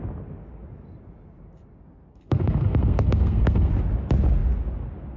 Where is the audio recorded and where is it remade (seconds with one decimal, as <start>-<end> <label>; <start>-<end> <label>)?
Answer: 0.0-2.1 recorded; 2.1-3.7 remade; 3.7-5.2 recorded